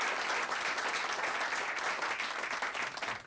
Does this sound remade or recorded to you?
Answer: recorded